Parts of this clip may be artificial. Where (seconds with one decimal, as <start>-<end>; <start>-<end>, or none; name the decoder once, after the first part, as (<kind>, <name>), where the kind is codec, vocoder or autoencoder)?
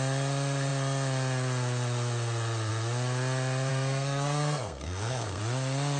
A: 3.7-5.4 (codec, SNAC)